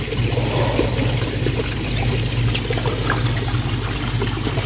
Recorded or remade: recorded